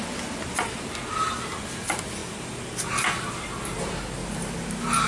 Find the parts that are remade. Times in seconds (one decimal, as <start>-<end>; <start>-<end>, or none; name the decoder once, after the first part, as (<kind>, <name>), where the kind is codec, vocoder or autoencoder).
none